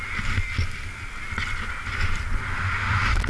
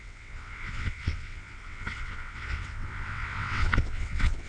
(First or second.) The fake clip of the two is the second